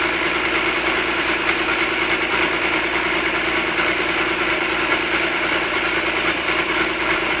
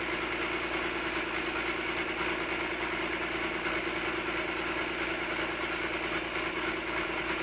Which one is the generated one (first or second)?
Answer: first